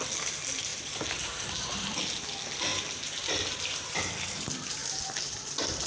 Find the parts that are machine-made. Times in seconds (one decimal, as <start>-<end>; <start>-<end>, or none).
0.7-1.9; 2.7-4.0; 4.8-5.5